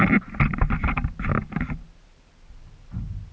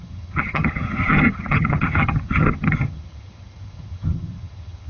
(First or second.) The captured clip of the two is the first